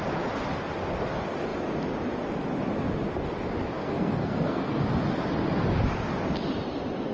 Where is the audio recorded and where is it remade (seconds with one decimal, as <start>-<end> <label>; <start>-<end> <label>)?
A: 0.0-3.8 recorded; 3.8-4.8 remade; 4.8-7.1 recorded